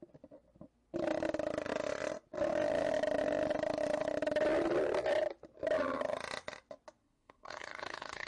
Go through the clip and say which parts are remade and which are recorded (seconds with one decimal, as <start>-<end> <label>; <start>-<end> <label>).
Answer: 0.0-7.0 recorded; 7.0-8.3 remade